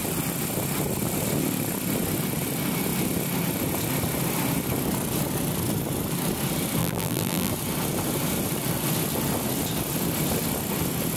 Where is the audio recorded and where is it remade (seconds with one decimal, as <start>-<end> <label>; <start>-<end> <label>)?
0.0-6.8 recorded; 6.8-7.5 remade; 7.5-11.2 recorded